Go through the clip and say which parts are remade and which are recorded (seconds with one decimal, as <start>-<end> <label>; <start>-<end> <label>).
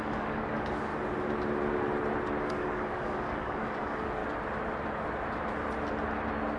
0.0-0.9 remade; 0.9-2.4 recorded; 2.4-4.2 remade; 4.2-6.6 recorded